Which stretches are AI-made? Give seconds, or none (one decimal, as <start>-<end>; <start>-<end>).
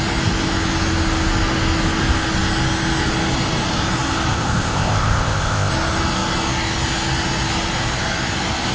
4.3-5.7